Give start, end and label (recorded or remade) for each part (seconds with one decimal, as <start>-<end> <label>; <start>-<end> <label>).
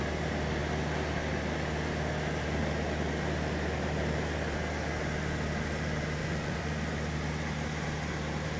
0.0-6.2 recorded; 6.2-6.7 remade; 6.7-8.6 recorded